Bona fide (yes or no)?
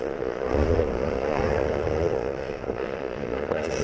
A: no